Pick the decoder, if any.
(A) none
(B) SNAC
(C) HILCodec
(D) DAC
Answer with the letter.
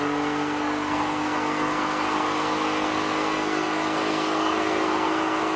B